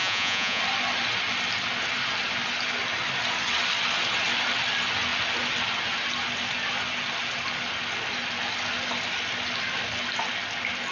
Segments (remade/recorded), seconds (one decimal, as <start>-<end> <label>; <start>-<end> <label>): 0.0-0.6 remade; 0.6-10.9 recorded

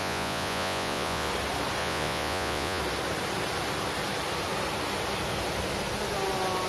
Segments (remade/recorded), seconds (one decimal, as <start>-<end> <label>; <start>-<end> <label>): 0.0-1.3 remade; 1.3-1.8 recorded; 1.8-2.8 remade; 2.8-6.7 recorded

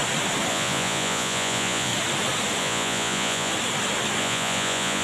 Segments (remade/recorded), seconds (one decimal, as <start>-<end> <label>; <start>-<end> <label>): 0.0-0.5 recorded; 0.5-1.9 remade; 1.9-2.6 recorded; 2.6-3.5 remade; 3.5-4.2 recorded; 4.2-5.0 remade

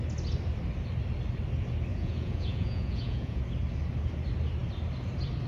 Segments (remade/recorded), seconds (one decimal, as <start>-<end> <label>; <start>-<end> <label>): 0.0-1.9 recorded; 1.9-3.4 remade; 3.4-5.5 recorded

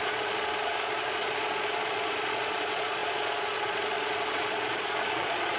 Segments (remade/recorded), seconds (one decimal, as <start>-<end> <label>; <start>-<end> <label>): 0.0-5.6 remade